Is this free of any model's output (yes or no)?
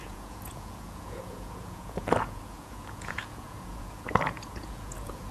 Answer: no